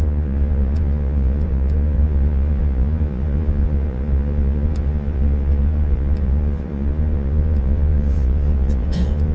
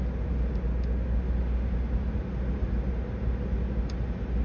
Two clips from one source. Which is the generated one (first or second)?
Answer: first